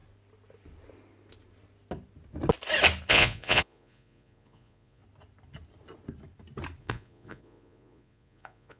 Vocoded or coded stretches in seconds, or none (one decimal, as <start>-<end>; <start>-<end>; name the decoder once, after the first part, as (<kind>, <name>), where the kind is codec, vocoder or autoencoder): 3.1-5.0 (vocoder, Vocos); 6.8-8.8